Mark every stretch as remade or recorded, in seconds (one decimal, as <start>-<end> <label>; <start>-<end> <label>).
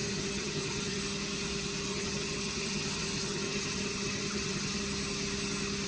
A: 0.0-1.0 remade; 1.0-1.9 recorded; 1.9-4.8 remade; 4.8-5.9 recorded